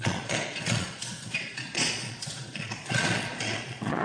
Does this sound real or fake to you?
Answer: fake